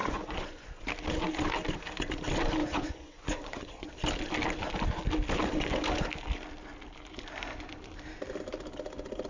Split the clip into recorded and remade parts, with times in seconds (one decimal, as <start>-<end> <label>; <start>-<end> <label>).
0.0-0.8 remade; 0.8-2.6 recorded; 2.6-3.9 remade; 3.9-9.3 recorded